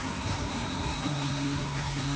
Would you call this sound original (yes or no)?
no